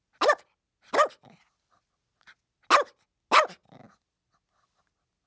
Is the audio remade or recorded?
recorded